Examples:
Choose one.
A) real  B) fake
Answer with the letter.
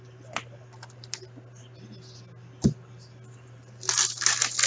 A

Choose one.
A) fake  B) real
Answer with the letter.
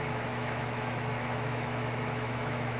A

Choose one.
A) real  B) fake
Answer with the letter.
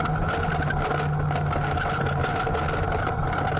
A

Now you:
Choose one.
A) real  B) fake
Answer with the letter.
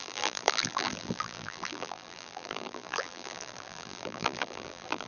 B